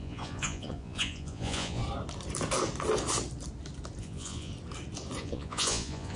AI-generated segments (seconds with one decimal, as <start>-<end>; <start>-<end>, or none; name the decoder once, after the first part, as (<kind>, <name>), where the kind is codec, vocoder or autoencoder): 0.0-1.8 (vocoder, Vocos); 4.0-4.5; 5.2-6.2